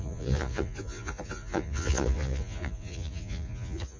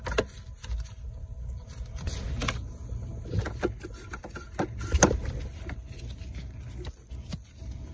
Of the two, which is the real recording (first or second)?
second